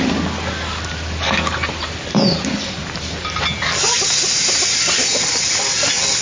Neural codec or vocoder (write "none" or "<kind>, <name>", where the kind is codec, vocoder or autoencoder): none